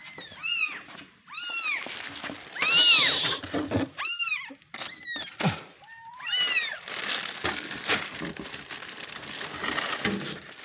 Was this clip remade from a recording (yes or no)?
no